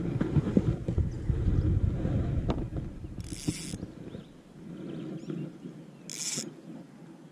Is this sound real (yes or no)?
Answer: yes